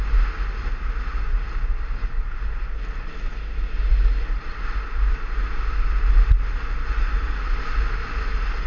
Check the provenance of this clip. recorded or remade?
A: recorded